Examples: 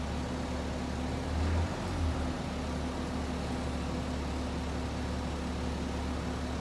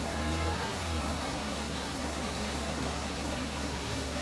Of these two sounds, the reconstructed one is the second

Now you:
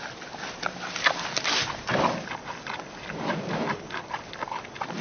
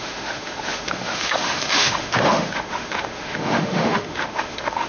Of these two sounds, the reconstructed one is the second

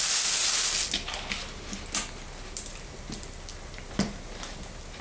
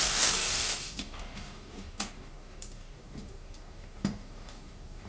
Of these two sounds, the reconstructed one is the second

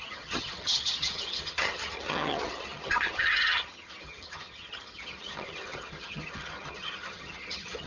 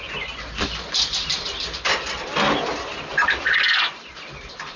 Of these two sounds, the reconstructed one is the first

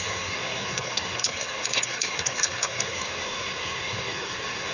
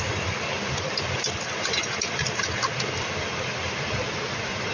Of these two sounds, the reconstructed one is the first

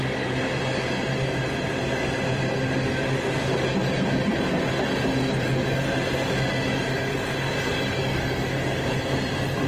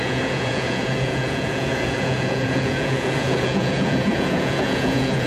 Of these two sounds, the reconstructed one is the second